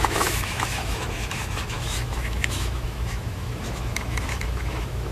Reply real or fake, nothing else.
fake